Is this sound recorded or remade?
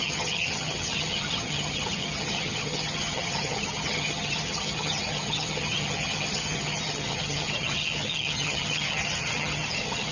remade